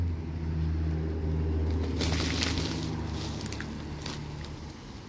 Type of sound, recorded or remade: recorded